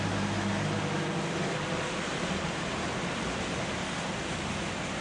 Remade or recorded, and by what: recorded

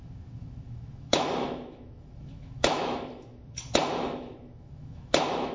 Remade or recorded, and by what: remade, autoencoder, DAC-VAE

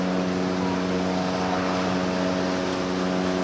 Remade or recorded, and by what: recorded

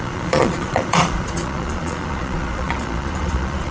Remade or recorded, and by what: remade, vocoder, Vocos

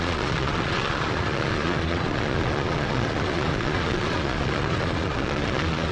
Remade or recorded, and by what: remade, vocoder, Vocos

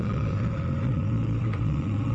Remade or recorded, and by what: remade, vocoder, Vocos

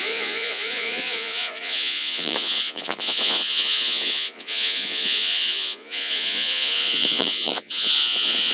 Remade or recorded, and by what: remade, vocoder, Vocos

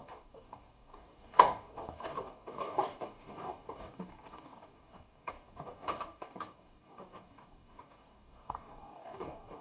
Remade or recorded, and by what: remade, codec, DAC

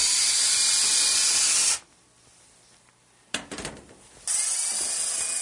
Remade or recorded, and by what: recorded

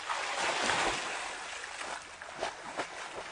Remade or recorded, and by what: recorded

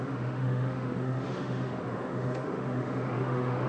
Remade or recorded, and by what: remade, autoencoder, DAC-VAE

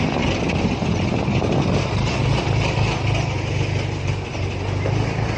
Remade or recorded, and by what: recorded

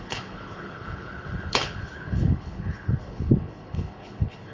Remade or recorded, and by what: remade, codec, HILCodec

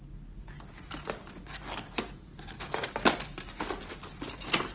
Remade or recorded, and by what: recorded